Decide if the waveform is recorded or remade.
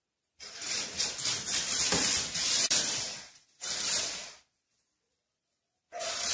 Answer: remade